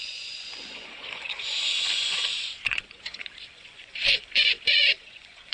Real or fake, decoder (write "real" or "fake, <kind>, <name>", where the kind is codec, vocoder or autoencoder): fake, vocoder, Vocos